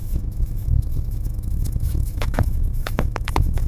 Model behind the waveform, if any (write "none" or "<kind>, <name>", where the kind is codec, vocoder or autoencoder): autoencoder, DAC-VAE